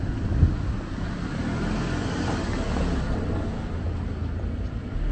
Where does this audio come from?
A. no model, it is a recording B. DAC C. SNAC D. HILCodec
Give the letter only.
A